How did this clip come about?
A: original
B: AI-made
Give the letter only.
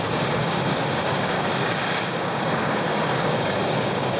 B